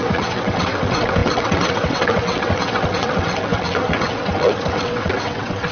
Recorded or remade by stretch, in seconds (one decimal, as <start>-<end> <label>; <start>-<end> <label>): 0.0-5.7 remade